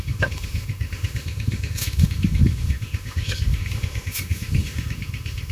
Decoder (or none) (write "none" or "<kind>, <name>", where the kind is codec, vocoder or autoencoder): autoencoder, DAC-VAE